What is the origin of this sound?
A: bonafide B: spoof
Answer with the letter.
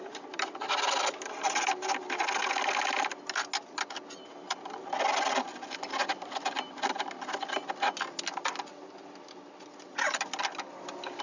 A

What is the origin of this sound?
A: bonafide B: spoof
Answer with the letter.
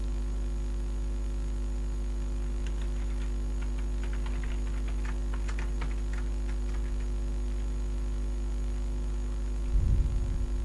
B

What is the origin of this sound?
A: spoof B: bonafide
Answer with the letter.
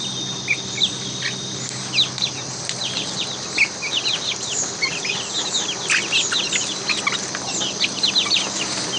B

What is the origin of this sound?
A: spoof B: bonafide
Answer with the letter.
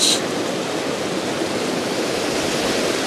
B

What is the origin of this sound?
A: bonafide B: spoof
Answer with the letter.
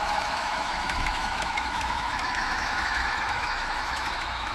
B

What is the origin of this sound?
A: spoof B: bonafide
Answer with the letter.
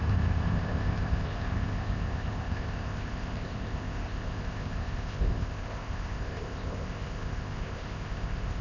A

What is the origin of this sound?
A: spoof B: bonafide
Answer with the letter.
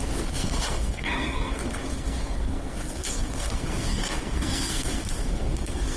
A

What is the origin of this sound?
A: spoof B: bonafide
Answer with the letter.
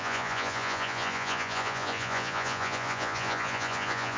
A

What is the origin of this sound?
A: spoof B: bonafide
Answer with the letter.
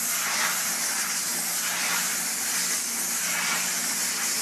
B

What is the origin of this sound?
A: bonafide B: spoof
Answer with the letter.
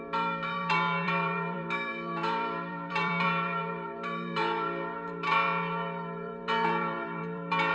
B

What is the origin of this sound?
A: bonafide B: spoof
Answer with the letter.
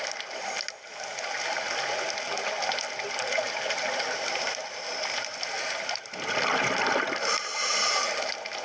A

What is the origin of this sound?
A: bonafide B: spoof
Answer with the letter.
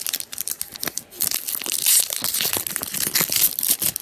A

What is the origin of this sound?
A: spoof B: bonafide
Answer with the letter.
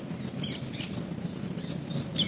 B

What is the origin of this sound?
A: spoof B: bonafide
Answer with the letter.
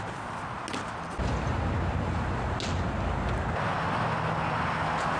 B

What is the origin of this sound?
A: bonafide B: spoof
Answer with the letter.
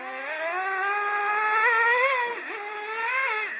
A